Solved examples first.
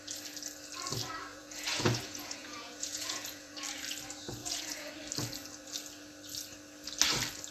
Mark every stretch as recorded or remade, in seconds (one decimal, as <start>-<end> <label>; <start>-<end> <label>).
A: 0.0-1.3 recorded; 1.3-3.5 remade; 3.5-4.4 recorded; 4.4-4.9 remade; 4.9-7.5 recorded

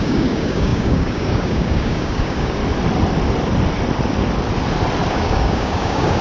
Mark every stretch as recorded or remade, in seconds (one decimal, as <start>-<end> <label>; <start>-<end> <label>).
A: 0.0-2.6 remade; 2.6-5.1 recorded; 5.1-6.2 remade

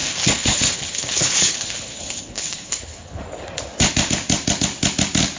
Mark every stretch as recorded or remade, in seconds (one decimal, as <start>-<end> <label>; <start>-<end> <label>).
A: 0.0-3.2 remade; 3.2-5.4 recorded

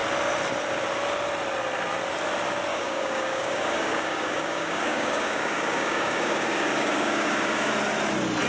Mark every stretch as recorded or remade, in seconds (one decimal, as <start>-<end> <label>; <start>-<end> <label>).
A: 0.0-2.7 recorded; 2.7-7.7 remade; 7.7-8.5 recorded